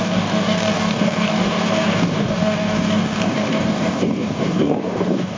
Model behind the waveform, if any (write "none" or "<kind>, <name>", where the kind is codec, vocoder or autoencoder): codec, DAC